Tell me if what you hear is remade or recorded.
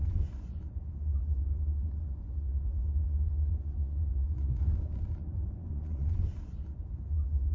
remade